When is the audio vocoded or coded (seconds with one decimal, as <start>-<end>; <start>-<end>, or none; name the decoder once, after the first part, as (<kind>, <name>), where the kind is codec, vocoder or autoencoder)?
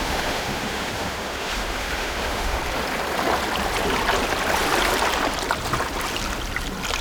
0.0-2.6 (autoencoder, DAC-VAE)